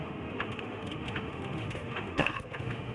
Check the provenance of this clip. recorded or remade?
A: remade